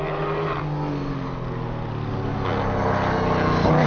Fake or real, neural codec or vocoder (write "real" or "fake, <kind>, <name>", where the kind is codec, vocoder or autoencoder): real